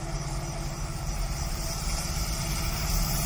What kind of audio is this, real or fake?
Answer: fake